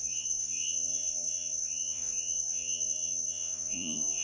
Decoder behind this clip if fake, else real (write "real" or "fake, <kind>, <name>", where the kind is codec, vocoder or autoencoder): fake, vocoder, Vocos